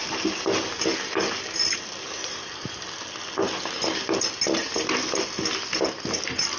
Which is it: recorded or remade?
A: recorded